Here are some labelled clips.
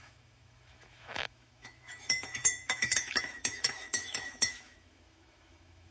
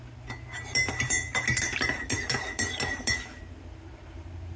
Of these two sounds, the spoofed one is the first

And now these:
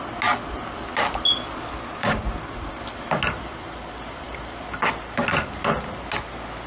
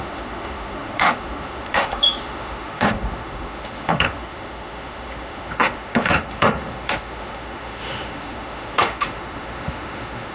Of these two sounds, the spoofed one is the second